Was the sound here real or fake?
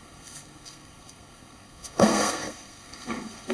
fake